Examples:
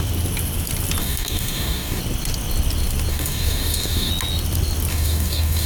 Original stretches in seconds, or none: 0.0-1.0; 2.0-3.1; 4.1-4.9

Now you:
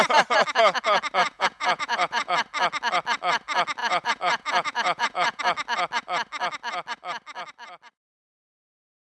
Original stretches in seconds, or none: 0.0-1.2; 2.3-3.8; 5.4-9.0